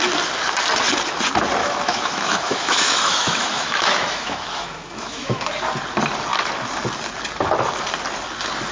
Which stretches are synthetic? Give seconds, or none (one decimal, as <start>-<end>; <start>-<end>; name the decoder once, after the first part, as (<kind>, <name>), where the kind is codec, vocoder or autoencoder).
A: 1.6-5.5 (autoencoder, DAC-VAE)